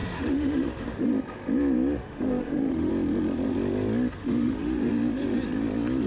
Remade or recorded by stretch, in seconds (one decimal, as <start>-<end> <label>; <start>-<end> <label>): 0.0-1.1 remade; 1.1-2.0 recorded; 2.0-2.9 remade; 2.9-4.2 recorded; 4.2-4.9 remade; 4.9-6.1 recorded